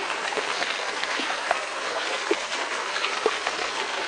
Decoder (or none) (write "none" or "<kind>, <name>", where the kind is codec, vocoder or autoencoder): codec, SNAC